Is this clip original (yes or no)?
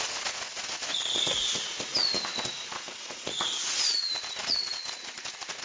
no